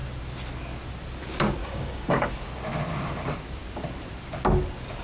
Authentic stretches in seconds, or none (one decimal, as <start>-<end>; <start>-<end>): 0.0-1.6; 2.3-5.0